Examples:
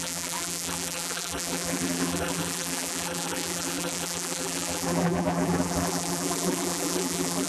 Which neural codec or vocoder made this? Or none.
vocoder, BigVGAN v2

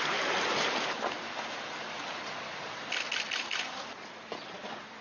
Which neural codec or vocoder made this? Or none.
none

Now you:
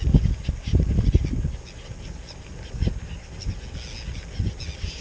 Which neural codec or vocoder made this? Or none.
none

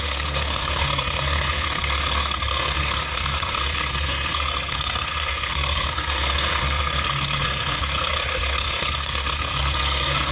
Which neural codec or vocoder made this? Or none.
codec, SNAC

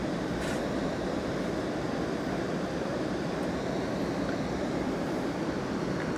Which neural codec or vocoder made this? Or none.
none